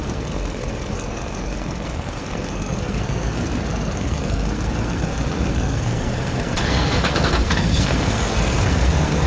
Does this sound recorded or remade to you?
remade